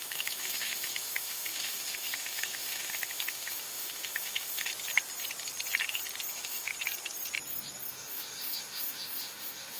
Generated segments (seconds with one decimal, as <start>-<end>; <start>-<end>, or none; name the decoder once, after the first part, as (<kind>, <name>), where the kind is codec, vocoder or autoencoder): 0.0-4.7 (autoencoder, DAC-VAE); 6.3-6.7; 7.9-9.8